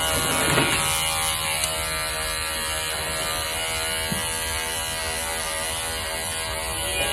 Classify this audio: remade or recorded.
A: recorded